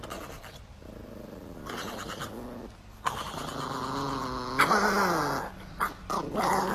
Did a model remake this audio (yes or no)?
no